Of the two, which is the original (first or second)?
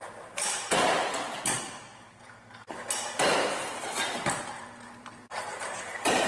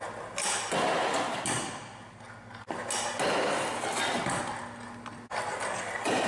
second